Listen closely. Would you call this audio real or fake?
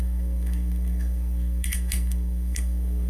fake